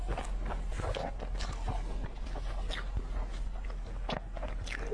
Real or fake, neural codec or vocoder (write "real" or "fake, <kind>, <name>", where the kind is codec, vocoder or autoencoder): real